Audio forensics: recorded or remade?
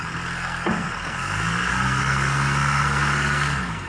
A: remade